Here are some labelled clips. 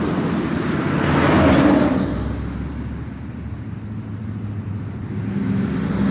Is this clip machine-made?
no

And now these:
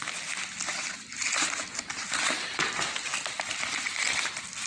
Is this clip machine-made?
no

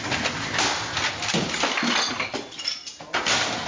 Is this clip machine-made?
no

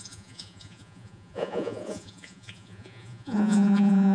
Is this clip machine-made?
yes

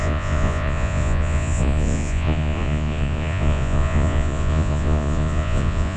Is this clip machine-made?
yes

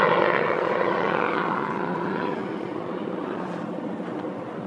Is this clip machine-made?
yes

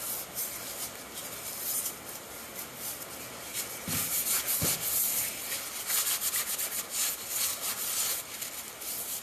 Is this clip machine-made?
no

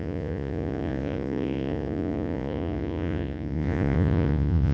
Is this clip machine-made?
yes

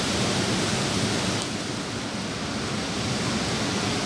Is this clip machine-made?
no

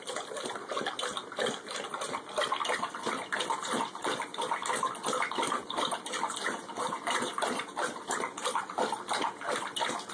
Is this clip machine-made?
no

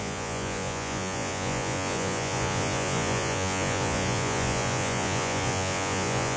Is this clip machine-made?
yes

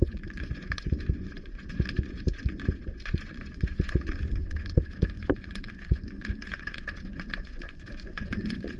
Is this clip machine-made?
yes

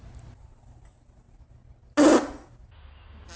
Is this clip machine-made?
no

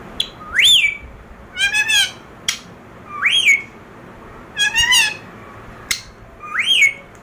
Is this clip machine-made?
no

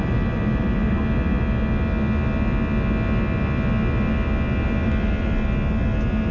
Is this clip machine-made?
no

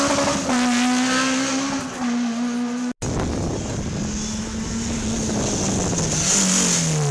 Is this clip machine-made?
no